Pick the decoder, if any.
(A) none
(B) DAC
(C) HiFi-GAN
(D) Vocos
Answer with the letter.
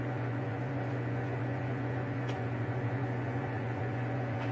D